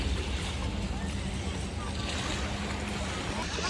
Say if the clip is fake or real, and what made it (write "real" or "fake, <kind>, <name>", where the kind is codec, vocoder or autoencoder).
real